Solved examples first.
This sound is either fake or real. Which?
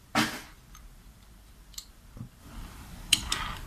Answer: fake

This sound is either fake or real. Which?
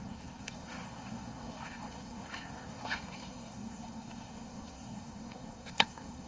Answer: fake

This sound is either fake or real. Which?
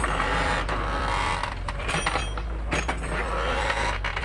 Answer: real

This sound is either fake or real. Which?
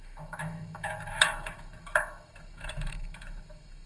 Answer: fake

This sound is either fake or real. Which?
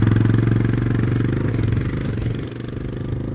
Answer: real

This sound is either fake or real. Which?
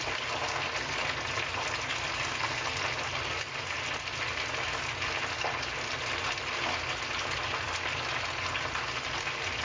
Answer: real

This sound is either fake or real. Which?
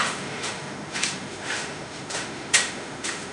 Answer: fake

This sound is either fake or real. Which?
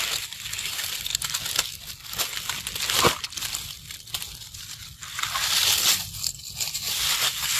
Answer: real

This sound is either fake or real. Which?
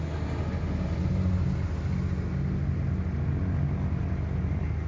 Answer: real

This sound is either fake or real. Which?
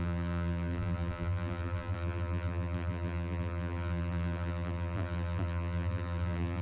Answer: fake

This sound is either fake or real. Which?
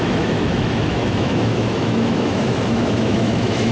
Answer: fake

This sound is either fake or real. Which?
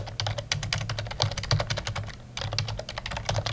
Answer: real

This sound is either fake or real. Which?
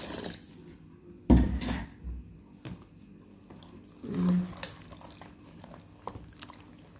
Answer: real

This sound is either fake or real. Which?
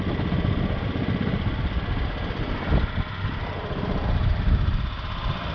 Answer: real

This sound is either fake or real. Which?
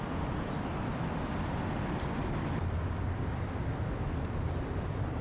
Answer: fake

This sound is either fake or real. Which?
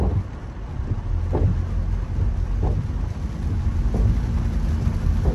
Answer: real